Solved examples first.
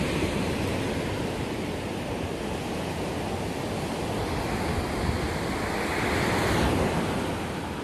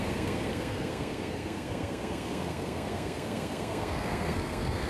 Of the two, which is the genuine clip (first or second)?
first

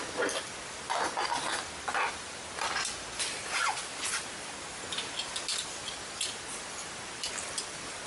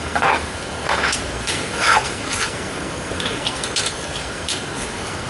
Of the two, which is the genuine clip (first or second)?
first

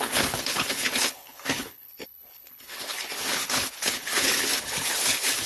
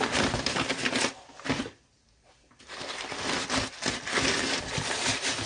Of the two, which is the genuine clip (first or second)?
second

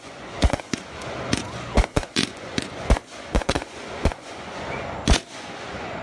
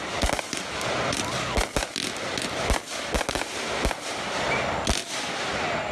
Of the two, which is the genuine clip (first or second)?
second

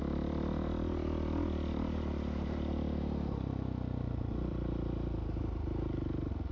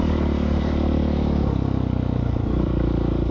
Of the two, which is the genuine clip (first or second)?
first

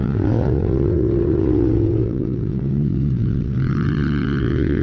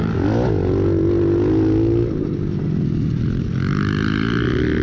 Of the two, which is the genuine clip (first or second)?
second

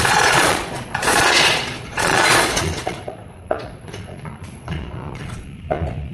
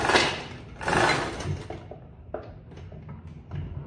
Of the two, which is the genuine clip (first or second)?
second